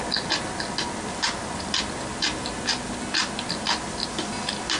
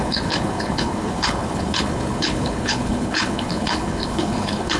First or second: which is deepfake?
second